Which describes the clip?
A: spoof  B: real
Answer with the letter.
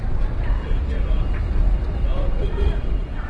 A